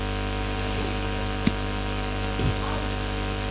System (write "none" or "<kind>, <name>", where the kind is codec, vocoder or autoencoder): none